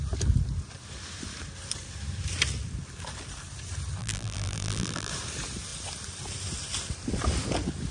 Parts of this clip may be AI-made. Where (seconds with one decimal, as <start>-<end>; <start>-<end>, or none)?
4.0-5.1